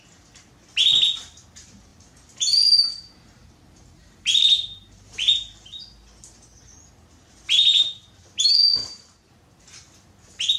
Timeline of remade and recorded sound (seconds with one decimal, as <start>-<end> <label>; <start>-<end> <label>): 0.0-1.9 recorded; 1.9-5.8 remade; 5.8-8.8 recorded; 8.8-9.3 remade; 9.3-10.6 recorded